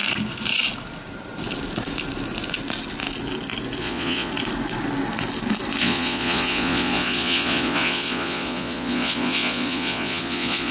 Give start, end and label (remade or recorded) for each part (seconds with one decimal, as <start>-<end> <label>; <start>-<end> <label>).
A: 0.0-3.8 recorded; 3.8-4.3 remade; 4.3-5.8 recorded; 5.8-10.7 remade